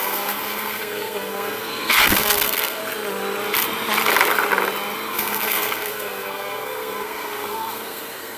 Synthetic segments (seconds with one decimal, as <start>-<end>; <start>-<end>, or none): 0.0-2.8; 5.1-8.4